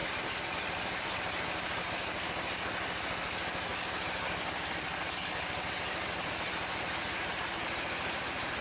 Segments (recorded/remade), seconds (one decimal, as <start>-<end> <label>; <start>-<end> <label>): 0.0-1.1 remade; 1.1-3.7 recorded; 3.7-7.2 remade; 7.2-8.6 recorded